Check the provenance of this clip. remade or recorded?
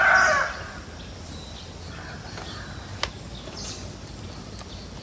recorded